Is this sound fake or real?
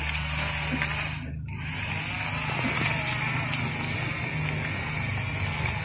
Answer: real